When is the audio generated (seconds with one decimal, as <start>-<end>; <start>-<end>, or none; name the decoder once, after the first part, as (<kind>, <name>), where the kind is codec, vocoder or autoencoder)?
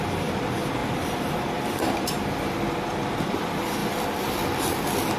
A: 0.8-2.2 (vocoder, BigVGAN v2); 3.8-4.6